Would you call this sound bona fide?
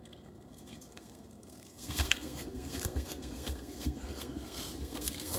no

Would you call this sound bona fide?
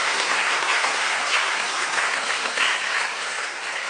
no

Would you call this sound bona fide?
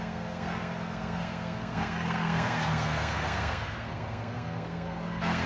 no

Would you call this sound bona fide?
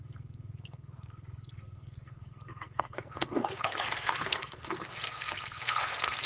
no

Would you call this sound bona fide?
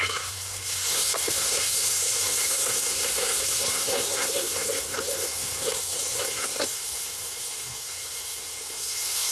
no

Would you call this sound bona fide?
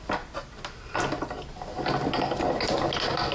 yes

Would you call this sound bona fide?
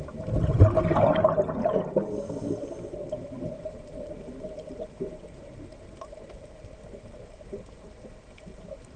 yes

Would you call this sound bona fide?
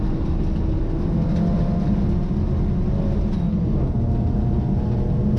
yes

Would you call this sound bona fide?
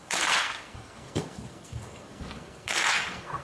no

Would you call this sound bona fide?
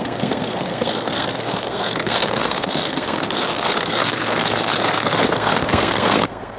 no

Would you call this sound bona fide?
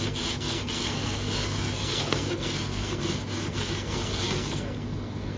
no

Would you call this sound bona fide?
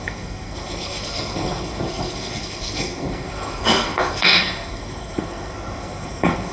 no